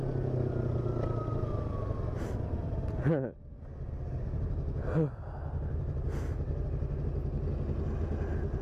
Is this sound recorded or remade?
recorded